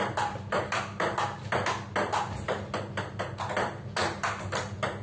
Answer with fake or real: real